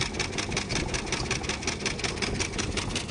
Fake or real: real